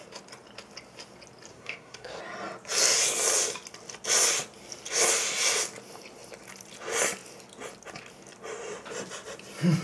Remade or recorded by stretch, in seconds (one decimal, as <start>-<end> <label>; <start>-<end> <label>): 0.0-1.5 recorded; 1.5-2.2 remade; 2.2-9.8 recorded